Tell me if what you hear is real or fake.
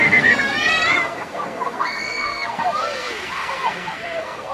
fake